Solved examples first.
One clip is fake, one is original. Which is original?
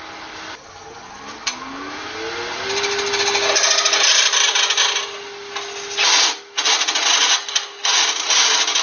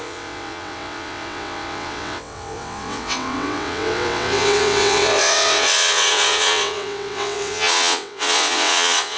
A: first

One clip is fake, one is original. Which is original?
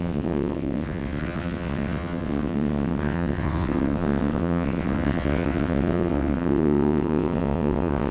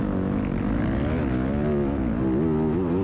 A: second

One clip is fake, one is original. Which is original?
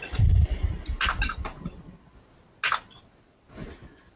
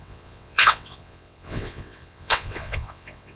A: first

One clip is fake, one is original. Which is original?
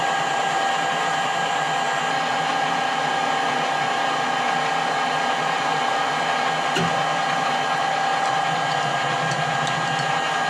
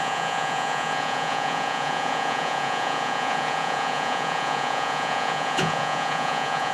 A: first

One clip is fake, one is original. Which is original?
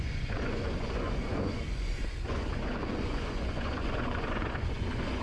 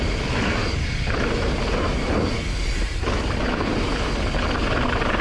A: second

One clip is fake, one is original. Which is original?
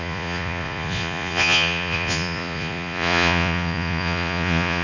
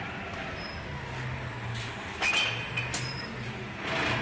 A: second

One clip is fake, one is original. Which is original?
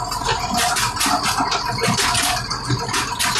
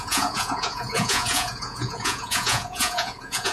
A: first